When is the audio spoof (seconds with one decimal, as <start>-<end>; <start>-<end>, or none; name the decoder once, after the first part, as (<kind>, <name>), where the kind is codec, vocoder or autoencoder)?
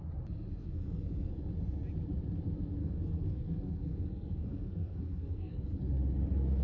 0.6-1.3 (codec, SNAC); 2.8-5.8